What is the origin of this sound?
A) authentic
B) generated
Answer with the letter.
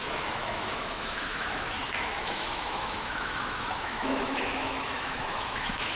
B